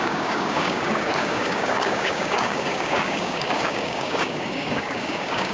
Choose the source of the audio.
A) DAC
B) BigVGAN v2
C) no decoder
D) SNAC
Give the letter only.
A